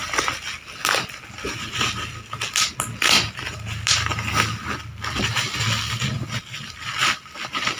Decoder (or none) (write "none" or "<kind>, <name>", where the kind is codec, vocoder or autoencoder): none